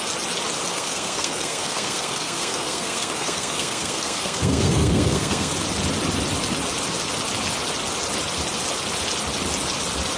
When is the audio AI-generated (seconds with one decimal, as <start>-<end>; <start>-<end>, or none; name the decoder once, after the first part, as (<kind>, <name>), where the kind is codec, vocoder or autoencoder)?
0.7-5.5 (codec, SNAC)